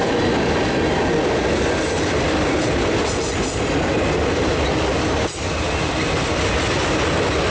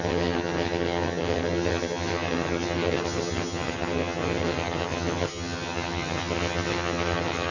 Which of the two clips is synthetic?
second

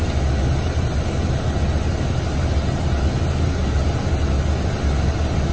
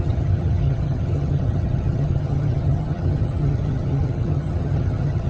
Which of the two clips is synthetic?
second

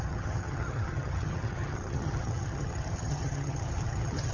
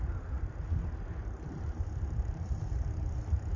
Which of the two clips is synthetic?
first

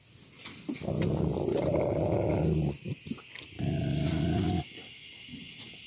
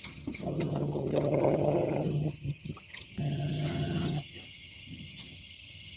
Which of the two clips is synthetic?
second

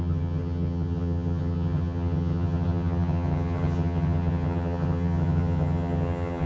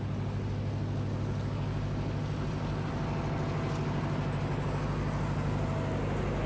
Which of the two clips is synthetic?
first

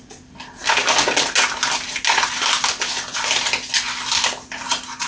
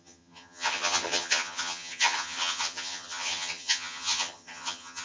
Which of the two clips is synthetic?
second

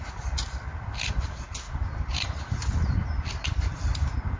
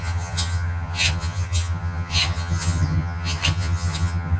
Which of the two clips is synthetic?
second